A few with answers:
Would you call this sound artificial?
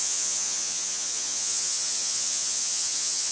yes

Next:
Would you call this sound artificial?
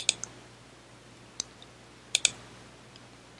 no